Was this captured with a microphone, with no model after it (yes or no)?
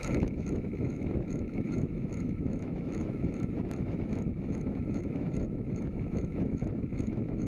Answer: no